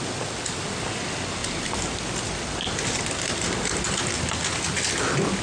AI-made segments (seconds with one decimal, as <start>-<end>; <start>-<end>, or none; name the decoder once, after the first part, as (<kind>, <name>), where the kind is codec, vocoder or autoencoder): none